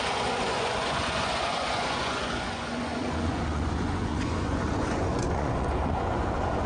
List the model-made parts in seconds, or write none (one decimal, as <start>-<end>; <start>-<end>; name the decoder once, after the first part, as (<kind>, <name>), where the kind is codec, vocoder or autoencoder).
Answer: 0.0-6.7 (vocoder, Vocos)